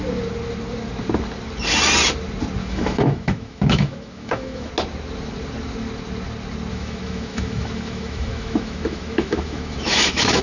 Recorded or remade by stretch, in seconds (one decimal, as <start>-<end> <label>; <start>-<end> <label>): 0.0-2.6 recorded; 2.6-4.7 remade; 4.7-6.7 recorded; 6.7-10.4 remade